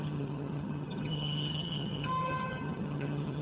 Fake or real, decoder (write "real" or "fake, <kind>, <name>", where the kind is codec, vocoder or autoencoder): fake, vocoder, HiFi-GAN